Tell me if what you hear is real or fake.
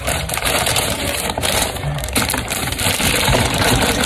fake